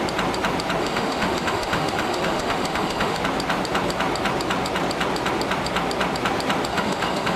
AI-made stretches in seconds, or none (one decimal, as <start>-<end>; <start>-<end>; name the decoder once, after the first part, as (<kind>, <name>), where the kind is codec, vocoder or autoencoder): 0.8-3.2 (autoencoder, DAC-VAE); 6.7-7.4